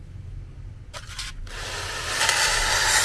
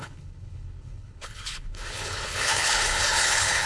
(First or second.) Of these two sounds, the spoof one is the second